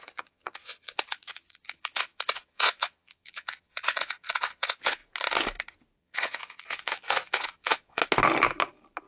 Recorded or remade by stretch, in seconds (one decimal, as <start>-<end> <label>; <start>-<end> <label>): 0.0-5.0 remade; 5.0-6.0 recorded; 6.0-8.0 remade; 8.0-9.1 recorded